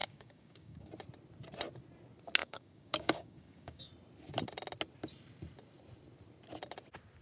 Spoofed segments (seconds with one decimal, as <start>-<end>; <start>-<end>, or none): 0.0-0.9; 2.4-3.9